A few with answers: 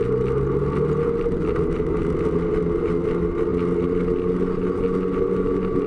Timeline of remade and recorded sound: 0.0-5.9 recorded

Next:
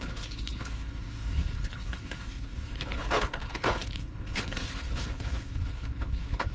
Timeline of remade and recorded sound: 0.0-6.5 remade

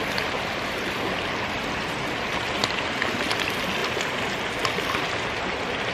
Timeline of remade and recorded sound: 0.0-2.6 recorded; 2.6-3.3 remade; 3.3-5.9 recorded

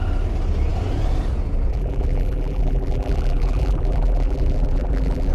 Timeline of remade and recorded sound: 0.0-1.7 recorded; 1.7-5.3 remade

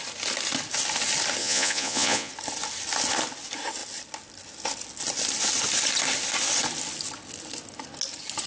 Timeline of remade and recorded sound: 0.0-1.4 recorded; 1.4-2.3 remade; 2.3-8.5 recorded

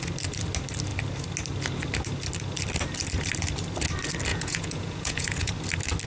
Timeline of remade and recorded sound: 0.0-4.3 recorded; 4.3-5.5 remade; 5.5-6.1 recorded

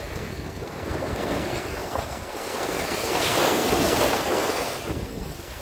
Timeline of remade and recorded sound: 0.0-5.6 remade